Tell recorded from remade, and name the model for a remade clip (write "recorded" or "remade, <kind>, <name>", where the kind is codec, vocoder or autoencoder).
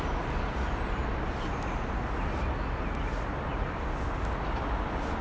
recorded